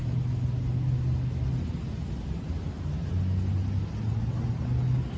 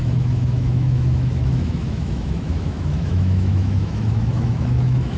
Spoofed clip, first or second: second